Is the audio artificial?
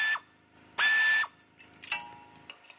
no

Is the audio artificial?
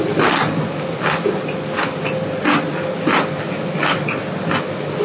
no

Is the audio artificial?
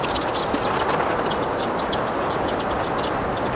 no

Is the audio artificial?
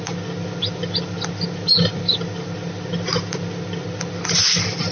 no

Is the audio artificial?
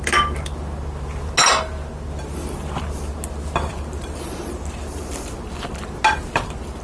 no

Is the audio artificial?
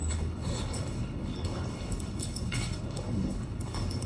yes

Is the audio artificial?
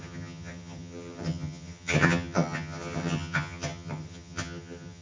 yes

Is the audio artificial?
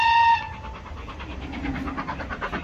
no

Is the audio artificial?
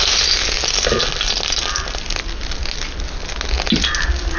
no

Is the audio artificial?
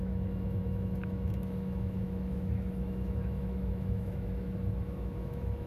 yes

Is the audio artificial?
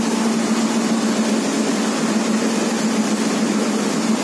no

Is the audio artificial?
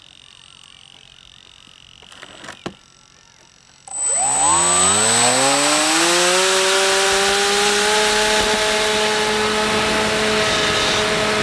no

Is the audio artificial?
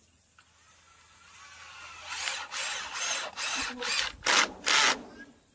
no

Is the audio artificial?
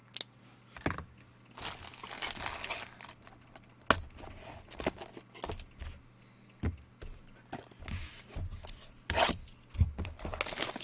no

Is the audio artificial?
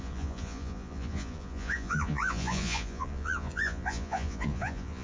yes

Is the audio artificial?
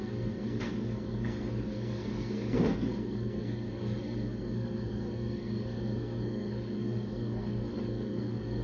yes